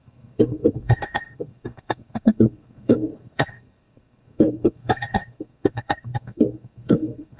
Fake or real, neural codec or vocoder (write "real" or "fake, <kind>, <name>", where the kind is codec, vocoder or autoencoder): fake, codec, SNAC